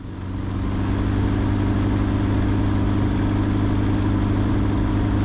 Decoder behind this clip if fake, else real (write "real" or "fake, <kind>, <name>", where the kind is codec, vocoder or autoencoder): real